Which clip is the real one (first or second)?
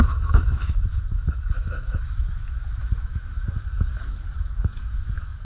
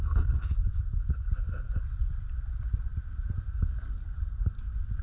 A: second